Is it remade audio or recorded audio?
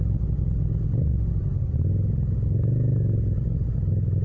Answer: recorded